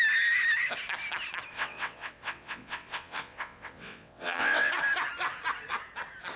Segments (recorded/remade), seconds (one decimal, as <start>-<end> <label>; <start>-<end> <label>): 0.0-1.5 recorded; 1.5-4.7 remade; 4.7-6.4 recorded